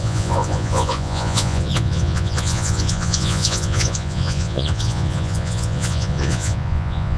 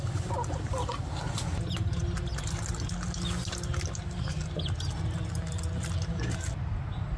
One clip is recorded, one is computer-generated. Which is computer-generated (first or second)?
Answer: first